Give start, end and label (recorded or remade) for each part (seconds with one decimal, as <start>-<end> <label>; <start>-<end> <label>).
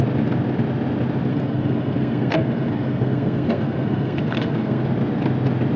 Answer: 0.0-1.3 recorded; 1.3-4.8 remade; 4.8-5.8 recorded